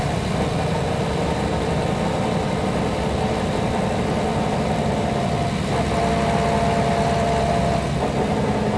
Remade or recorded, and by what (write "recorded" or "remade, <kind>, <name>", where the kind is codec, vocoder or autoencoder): recorded